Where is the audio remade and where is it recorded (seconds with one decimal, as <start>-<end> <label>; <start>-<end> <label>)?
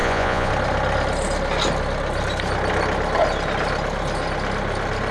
0.0-0.5 remade; 0.5-5.1 recorded